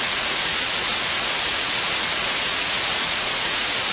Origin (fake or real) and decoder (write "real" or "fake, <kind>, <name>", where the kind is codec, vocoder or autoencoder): fake, vocoder, Vocos